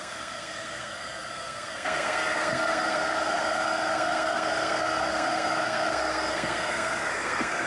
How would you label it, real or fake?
fake